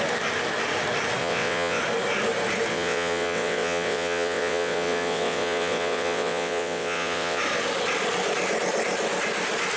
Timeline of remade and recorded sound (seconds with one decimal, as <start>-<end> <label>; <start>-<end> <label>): 0.0-1.2 recorded; 1.2-1.8 remade; 1.8-2.7 recorded; 2.7-7.4 remade; 7.4-9.8 recorded